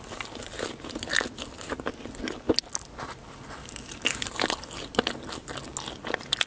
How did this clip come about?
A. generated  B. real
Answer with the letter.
B